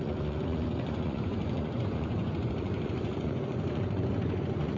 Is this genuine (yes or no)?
no